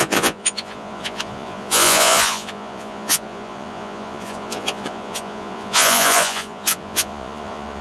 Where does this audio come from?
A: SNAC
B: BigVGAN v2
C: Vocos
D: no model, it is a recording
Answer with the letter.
C